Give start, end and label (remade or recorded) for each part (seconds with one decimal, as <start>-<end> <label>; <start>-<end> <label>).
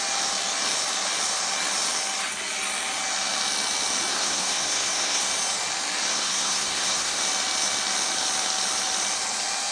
0.0-4.1 recorded; 4.1-5.3 remade; 5.3-6.1 recorded; 6.1-7.2 remade; 7.2-9.7 recorded